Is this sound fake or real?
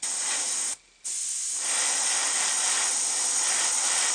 real